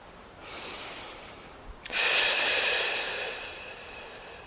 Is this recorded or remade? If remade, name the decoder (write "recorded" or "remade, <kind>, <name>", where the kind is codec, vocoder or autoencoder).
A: remade, vocoder, BigVGAN v2